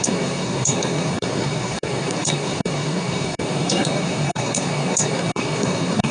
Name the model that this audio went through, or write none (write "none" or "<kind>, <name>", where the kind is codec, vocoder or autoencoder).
codec, SNAC